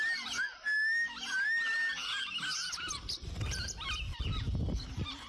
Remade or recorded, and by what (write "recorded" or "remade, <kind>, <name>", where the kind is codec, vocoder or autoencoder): recorded